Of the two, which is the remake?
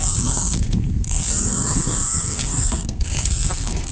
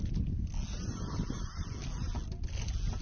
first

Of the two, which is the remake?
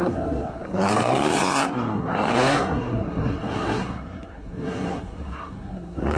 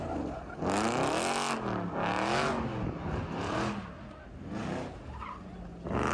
first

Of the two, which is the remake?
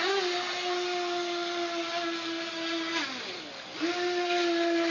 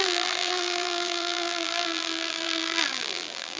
second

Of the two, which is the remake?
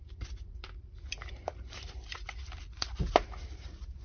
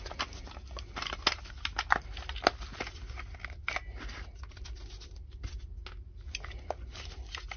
first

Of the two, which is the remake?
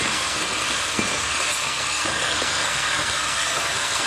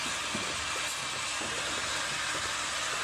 first